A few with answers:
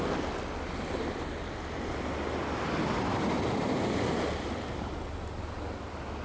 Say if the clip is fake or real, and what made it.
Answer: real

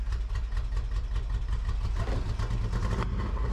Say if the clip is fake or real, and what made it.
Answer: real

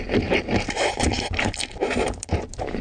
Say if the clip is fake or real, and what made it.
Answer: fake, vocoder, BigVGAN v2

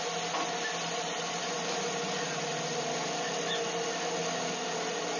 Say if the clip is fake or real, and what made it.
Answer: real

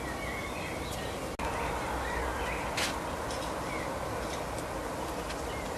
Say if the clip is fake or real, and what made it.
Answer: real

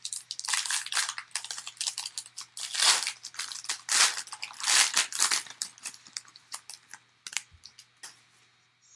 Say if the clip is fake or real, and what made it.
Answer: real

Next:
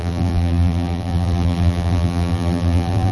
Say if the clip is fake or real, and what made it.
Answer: fake, vocoder, BigVGAN v2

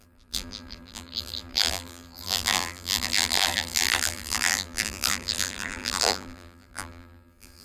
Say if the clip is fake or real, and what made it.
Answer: fake, vocoder, BigVGAN v2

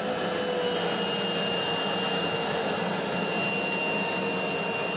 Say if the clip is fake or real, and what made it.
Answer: real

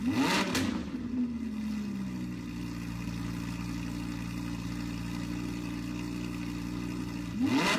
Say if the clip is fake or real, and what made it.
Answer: real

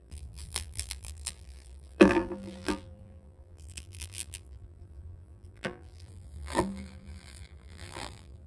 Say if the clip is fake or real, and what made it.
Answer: fake, vocoder, BigVGAN v2